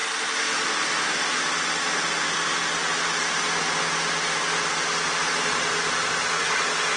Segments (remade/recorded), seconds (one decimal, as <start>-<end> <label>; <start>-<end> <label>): 0.0-7.0 recorded